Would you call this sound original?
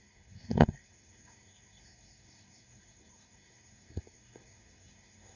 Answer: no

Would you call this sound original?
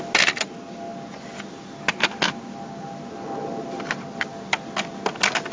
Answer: yes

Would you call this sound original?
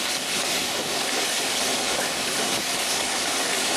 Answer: no